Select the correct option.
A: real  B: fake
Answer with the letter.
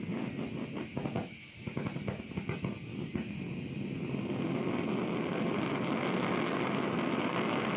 A